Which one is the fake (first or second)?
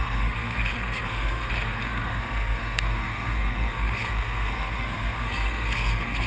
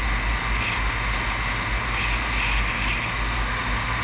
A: first